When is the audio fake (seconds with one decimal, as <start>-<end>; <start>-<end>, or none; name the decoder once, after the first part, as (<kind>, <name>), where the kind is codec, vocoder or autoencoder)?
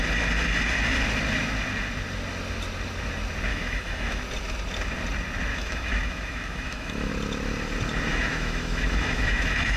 3.5-4.2 (autoencoder, DAC-VAE); 5.5-7.1; 8.1-9.8